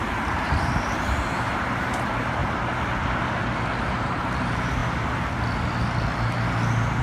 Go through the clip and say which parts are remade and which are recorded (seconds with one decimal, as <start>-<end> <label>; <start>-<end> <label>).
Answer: 0.0-2.4 remade; 2.4-3.8 recorded; 3.8-4.8 remade; 4.8-7.0 recorded